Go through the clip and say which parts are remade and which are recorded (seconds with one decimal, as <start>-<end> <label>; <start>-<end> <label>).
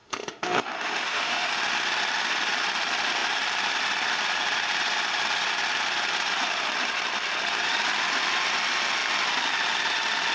0.0-1.5 remade; 1.5-10.3 recorded